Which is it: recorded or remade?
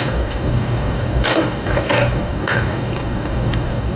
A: remade